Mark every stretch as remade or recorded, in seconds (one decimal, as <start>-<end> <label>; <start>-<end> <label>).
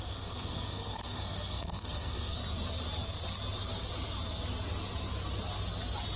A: 0.0-2.4 remade; 2.4-6.2 recorded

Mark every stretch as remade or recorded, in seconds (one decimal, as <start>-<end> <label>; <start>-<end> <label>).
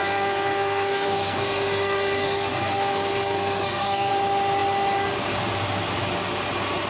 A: 0.0-4.1 remade; 4.1-6.9 recorded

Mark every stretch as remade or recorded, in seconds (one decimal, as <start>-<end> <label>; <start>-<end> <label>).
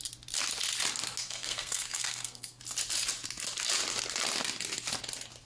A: 0.0-1.2 recorded; 1.2-2.6 remade; 2.6-5.5 recorded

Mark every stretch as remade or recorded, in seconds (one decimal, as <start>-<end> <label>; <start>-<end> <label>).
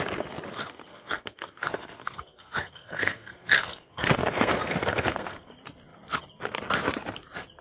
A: 0.0-0.9 recorded; 0.9-5.5 remade; 5.5-7.6 recorded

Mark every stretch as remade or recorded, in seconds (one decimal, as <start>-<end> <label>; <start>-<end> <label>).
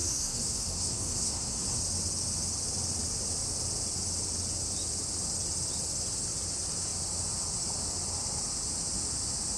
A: 0.0-1.8 remade; 1.8-9.6 recorded